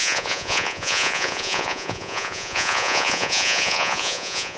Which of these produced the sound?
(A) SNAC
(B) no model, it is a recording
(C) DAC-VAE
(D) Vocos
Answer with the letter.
D